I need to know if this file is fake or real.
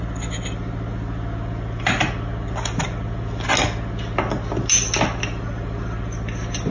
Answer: real